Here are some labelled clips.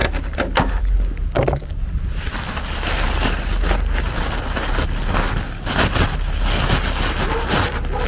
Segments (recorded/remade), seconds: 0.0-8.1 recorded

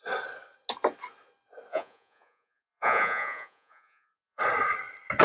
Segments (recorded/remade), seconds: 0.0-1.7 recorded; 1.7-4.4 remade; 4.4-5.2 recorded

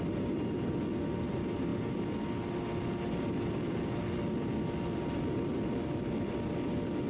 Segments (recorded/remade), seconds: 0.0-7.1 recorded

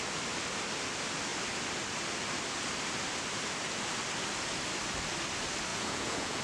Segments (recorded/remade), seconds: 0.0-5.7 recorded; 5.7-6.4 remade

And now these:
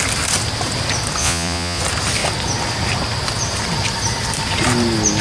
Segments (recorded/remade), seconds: 0.0-1.2 recorded; 1.2-1.8 remade; 1.8-5.2 recorded

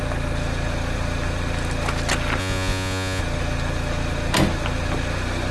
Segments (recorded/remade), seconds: 0.0-2.4 recorded; 2.4-3.2 remade; 3.2-5.5 recorded